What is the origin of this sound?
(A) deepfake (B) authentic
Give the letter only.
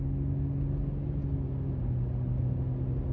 B